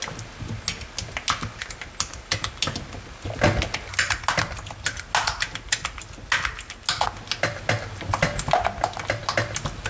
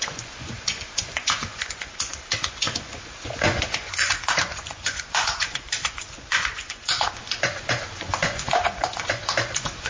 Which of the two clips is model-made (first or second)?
second